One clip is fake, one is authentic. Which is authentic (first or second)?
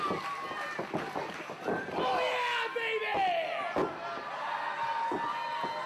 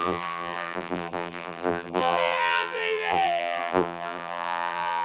first